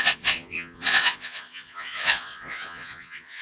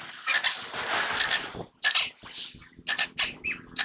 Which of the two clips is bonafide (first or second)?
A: second